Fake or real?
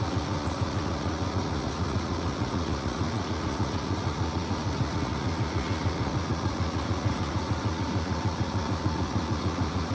fake